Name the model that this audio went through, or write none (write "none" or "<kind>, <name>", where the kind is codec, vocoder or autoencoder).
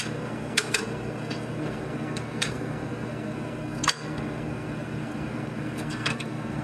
codec, SNAC